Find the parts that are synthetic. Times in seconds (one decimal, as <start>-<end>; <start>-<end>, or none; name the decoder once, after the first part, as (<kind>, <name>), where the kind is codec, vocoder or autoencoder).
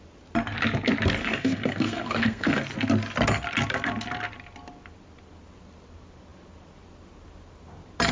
1.2-2.6 (codec, SNAC)